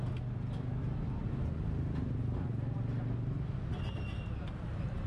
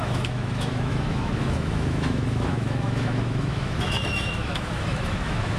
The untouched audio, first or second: first